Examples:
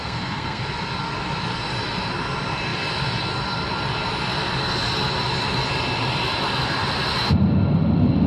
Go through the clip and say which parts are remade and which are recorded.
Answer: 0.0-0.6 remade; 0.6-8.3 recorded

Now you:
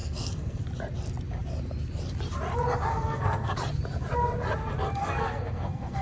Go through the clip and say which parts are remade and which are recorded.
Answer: 0.0-0.6 remade; 0.6-2.9 recorded; 2.9-3.5 remade; 3.5-5.0 recorded; 5.0-6.0 remade

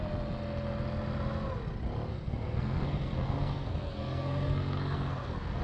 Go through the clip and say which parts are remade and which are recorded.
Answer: 0.0-2.1 recorded; 2.1-5.6 remade

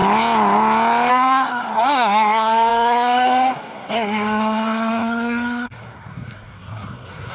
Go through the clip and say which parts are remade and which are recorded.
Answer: 0.0-1.1 recorded; 1.1-7.3 remade

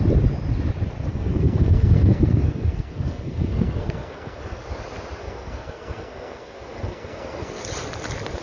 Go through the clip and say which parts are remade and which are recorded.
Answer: 0.0-1.1 recorded; 1.1-4.6 remade; 4.6-5.2 recorded; 5.2-7.6 remade; 7.6-8.4 recorded

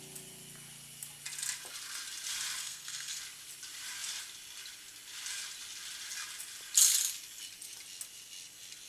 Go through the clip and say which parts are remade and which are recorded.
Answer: 0.0-2.6 recorded; 2.6-3.2 remade; 3.2-8.9 recorded